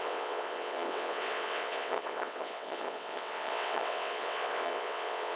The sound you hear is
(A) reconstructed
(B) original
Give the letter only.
A